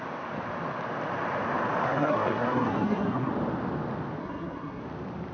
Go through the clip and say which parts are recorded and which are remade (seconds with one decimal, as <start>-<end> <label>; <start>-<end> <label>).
0.0-1.8 recorded; 1.8-3.3 remade; 3.3-4.2 recorded; 4.2-4.8 remade; 4.8-5.3 recorded